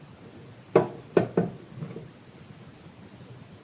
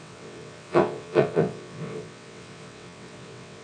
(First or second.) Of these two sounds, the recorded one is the first